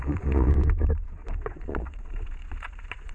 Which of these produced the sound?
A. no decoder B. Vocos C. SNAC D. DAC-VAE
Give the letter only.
B